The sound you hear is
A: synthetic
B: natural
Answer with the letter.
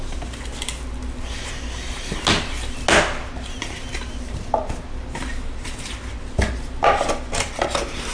B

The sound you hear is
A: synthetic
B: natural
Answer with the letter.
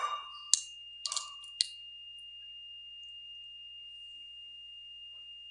B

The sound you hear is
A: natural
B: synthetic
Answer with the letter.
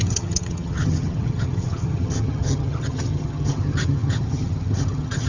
B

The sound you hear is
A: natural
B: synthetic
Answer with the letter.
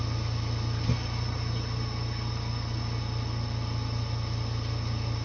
A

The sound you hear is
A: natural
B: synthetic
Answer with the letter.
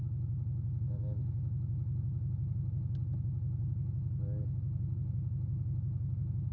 A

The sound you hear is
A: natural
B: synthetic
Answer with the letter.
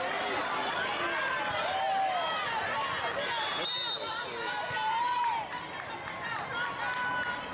A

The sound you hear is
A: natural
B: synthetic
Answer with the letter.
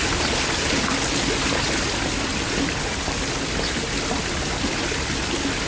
A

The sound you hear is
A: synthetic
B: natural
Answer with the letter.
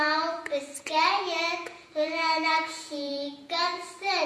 A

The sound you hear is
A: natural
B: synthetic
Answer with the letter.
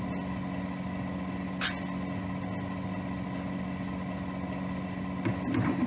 A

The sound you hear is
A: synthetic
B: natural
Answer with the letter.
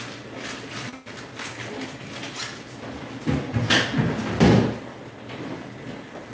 B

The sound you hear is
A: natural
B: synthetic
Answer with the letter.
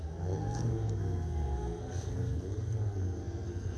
B